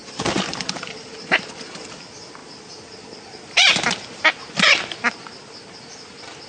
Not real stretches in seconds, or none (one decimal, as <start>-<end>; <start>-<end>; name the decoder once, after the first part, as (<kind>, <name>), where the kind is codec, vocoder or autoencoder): 0.0-1.5 (vocoder, BigVGAN v2)